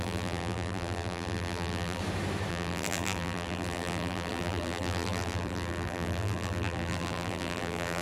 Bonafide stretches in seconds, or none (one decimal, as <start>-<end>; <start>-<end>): 2.0-2.5